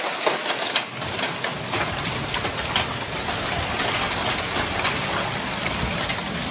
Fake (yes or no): no